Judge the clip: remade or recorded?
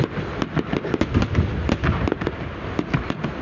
recorded